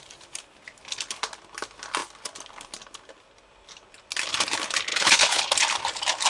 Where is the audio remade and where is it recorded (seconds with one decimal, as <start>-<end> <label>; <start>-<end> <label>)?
0.0-4.9 recorded; 4.9-5.4 remade; 5.4-6.3 recorded